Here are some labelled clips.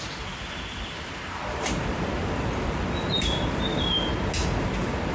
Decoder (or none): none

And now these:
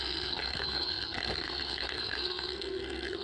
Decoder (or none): codec, SNAC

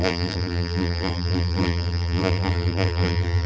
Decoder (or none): vocoder, BigVGAN v2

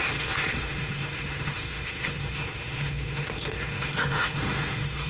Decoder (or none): autoencoder, DAC-VAE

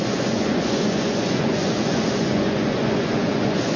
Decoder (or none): vocoder, Vocos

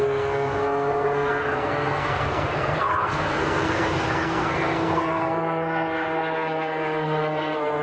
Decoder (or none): codec, SNAC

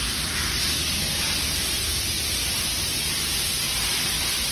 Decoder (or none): vocoder, BigVGAN v2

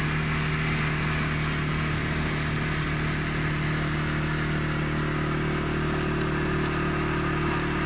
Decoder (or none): none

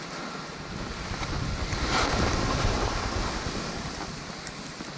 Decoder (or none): none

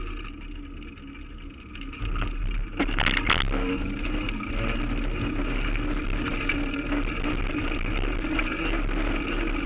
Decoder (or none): none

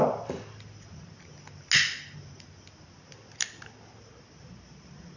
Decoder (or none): none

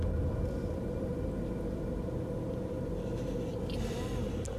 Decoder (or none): none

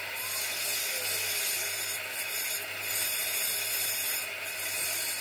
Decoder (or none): none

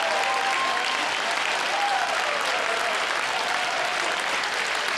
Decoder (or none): none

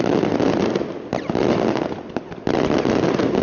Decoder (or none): none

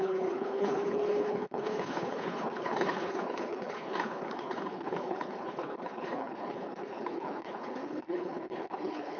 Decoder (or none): codec, HILCodec